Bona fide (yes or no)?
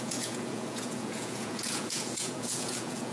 no